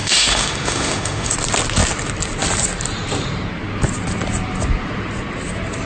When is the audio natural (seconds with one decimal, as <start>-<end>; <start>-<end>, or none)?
1.3-5.9